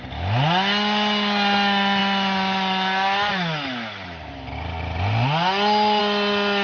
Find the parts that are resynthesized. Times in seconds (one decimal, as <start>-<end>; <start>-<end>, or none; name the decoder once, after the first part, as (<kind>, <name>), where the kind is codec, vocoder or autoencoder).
none